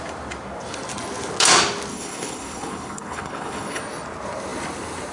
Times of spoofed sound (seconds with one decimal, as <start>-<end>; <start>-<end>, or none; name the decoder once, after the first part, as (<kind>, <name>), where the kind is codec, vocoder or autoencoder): 1.9-3.8 (codec, HILCodec)

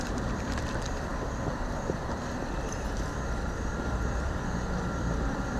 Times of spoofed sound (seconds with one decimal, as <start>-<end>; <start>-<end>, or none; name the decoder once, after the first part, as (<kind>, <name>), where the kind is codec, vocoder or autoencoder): 0.0-5.6 (vocoder, BigVGAN v2)

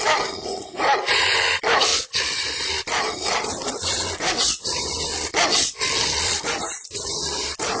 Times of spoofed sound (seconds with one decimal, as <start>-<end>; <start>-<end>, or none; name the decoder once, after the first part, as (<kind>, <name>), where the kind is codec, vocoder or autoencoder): 0.0-5.1 (vocoder, BigVGAN v2); 6.0-7.8

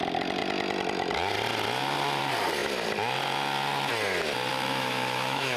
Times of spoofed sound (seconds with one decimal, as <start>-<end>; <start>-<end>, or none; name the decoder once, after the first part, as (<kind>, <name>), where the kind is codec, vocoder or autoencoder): 4.5-5.6 (autoencoder, DAC-VAE)

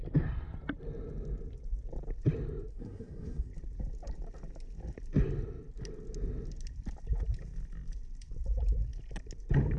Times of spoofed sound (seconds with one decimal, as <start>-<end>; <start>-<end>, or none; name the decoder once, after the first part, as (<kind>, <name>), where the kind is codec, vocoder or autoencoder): 2.7-3.5 (codec, SNAC)

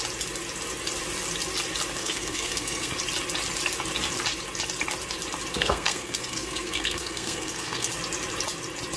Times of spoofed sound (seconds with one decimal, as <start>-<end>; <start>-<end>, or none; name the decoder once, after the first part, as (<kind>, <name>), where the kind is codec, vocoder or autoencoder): 2.0-2.9 (codec, SNAC); 5.5-7.9

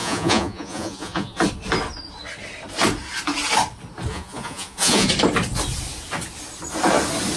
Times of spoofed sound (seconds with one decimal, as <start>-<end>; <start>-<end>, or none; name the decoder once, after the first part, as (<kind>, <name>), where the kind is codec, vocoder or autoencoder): 0.0-1.4 (vocoder, Vocos); 4.1-5.1